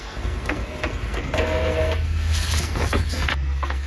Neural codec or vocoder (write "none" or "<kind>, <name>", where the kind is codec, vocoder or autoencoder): codec, SNAC